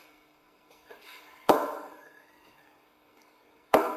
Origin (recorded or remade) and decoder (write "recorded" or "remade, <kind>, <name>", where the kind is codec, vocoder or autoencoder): remade, codec, SNAC